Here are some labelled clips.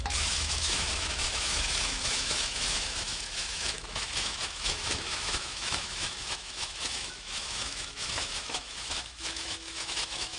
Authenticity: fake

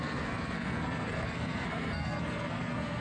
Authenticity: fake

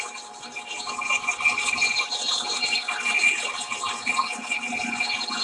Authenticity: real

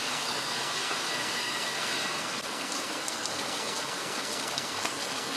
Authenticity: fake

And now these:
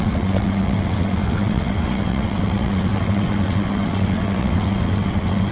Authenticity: fake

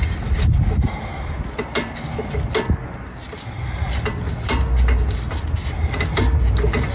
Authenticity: real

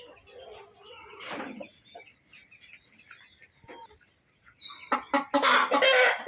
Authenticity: real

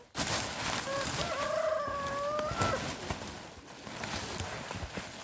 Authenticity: real